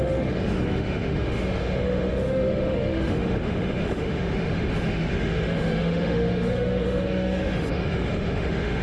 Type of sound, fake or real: fake